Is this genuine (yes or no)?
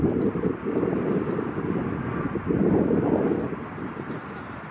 yes